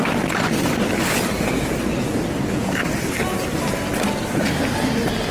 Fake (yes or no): no